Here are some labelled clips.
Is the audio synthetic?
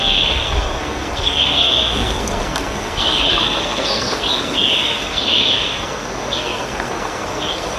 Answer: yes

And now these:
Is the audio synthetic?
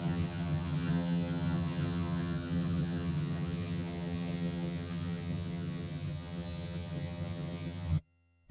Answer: yes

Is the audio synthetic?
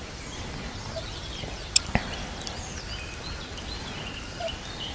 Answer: no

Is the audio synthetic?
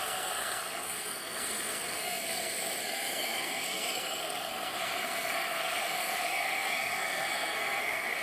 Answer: yes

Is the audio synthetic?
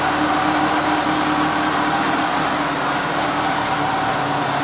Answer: no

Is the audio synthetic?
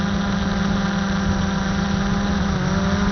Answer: no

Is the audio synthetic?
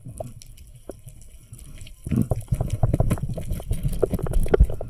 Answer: no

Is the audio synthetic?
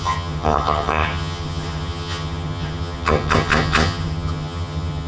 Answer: yes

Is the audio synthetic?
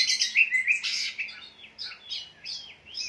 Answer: no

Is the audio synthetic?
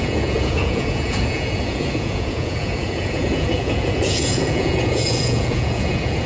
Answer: yes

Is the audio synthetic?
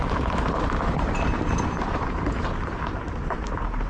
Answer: yes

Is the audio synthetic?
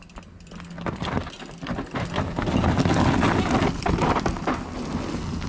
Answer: no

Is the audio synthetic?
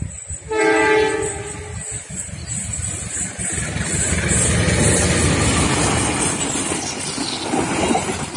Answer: no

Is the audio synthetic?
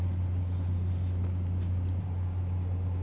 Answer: no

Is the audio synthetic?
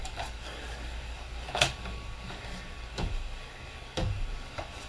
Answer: yes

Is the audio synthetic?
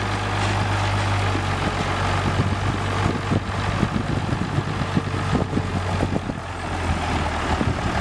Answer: no